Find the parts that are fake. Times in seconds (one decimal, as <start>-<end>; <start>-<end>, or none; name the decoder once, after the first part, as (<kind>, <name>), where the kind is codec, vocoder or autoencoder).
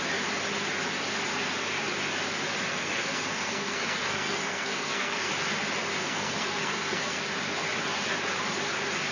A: 2.7-5.3 (codec, SNAC); 6.0-7.2